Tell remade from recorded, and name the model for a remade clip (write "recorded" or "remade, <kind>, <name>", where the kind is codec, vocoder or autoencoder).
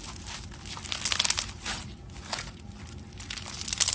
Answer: recorded